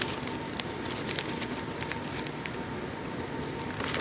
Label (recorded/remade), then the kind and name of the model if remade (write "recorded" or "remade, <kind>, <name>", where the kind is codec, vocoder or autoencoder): recorded